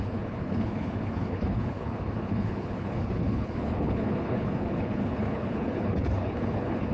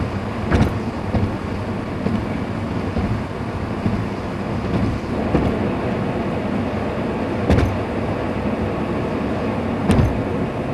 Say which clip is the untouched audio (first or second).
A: second